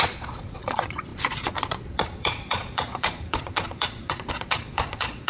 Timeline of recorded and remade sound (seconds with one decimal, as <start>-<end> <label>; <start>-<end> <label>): 0.0-5.3 remade